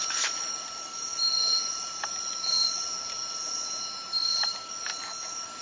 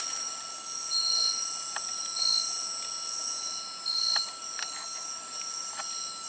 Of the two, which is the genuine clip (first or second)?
second